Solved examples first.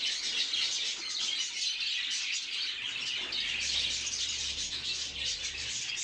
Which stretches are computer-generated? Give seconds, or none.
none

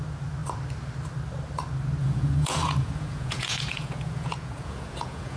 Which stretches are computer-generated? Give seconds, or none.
2.0-5.4 (vocoder, Vocos)

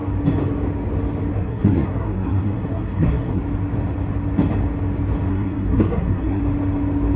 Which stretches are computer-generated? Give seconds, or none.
1.3-3.4 (codec, SNAC); 5.3-6.4

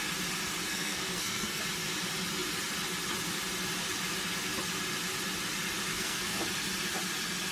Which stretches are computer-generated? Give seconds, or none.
0.7-1.6 (codec, SNAC); 5.9-6.4

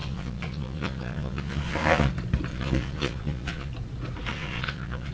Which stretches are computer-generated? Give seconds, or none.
0.0-2.1 (vocoder, Vocos); 2.5-3.7; 4.3-5.1

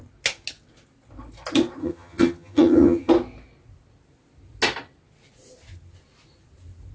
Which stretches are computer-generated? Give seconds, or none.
1.8-3.1 (vocoder, HiFi-GAN)

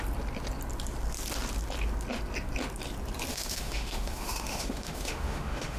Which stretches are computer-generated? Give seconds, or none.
3.3-5.8 (autoencoder, DAC-VAE)

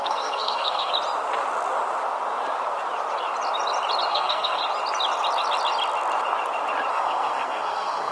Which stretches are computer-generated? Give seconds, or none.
0.0-0.9 (codec, SNAC); 4.1-4.6; 6.9-8.1